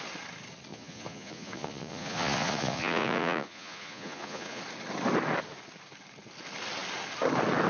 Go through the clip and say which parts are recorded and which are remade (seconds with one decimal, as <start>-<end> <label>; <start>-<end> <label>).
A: 0.0-0.7 recorded; 0.7-4.6 remade; 4.6-7.7 recorded